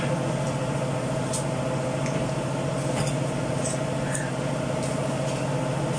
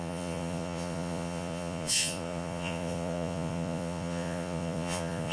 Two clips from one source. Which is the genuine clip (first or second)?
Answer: first